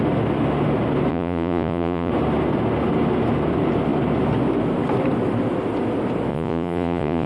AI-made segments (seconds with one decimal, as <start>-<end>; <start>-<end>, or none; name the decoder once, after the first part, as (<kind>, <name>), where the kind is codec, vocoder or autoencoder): 1.1-2.1 (vocoder, Vocos); 6.3-7.3